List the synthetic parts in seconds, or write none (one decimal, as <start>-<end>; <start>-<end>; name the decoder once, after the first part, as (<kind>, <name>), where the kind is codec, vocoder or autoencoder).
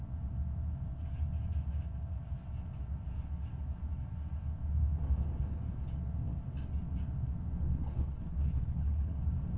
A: 7.8-9.2 (codec, HILCodec)